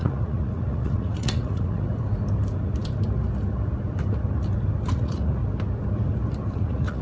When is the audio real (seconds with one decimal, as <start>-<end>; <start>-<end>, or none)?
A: 1.9-4.9; 5.4-6.5